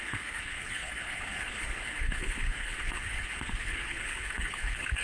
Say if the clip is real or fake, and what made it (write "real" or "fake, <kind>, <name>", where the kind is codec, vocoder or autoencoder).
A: fake, codec, HILCodec